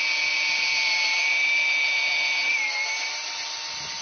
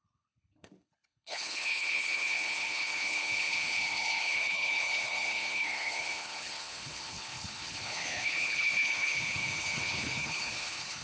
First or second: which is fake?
second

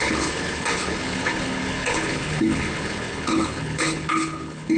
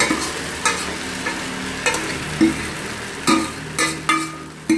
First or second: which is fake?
first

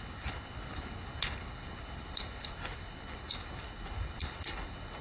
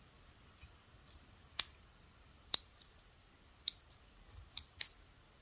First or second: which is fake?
first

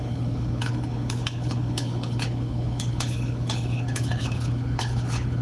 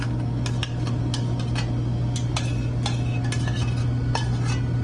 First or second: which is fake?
first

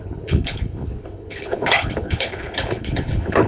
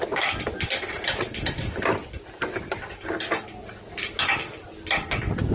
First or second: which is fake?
first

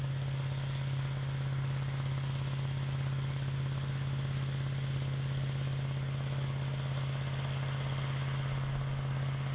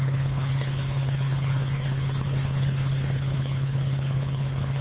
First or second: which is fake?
second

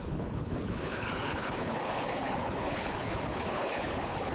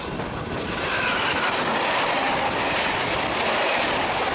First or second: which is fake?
first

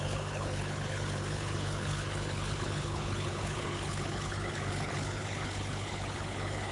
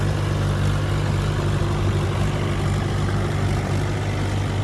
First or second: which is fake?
first